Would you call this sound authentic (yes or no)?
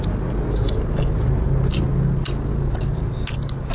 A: yes